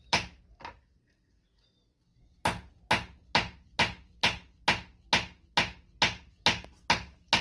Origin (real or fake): real